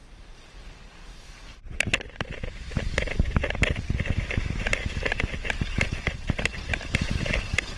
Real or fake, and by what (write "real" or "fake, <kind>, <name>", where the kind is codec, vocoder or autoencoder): real